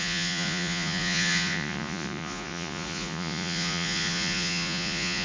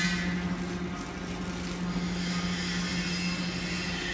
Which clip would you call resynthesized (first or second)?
first